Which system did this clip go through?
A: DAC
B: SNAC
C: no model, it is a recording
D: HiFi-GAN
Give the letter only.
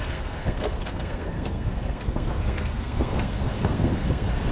B